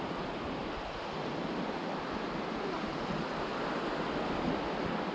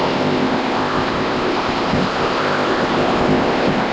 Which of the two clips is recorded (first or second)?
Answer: first